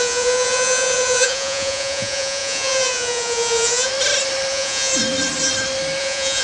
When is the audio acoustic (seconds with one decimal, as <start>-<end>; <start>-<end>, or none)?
3.9-4.5; 4.9-6.0

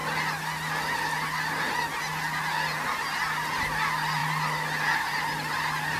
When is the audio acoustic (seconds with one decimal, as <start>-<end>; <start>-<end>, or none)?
0.0-6.0

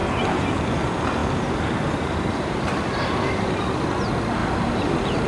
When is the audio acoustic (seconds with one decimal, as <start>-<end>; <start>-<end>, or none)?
0.6-1.2; 3.9-4.4

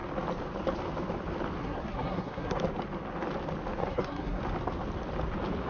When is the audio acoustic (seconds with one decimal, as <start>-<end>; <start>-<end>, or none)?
0.0-1.6; 2.6-3.8; 4.4-5.7

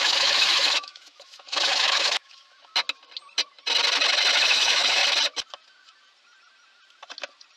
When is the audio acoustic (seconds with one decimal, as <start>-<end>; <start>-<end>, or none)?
2.7-4.4; 5.0-7.6

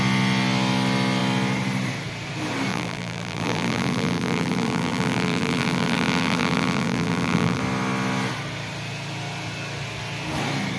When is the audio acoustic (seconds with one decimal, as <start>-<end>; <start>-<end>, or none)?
0.0-2.7; 7.6-10.8

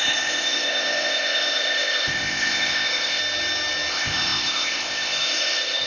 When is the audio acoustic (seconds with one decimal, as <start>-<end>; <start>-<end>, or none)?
3.2-3.9

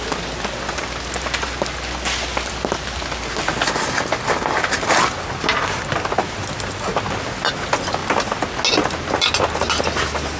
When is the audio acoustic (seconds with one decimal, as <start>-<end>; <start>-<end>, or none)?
0.0-10.4